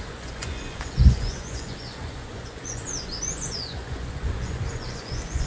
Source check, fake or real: fake